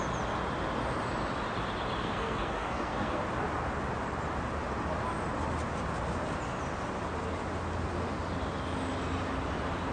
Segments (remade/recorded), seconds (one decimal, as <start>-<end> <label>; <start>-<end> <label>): 0.0-2.0 recorded; 2.0-3.2 remade; 3.2-9.9 recorded